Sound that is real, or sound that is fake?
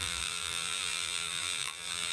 fake